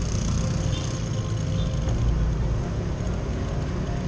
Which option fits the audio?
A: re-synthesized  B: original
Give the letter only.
B